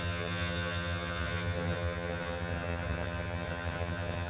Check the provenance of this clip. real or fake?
fake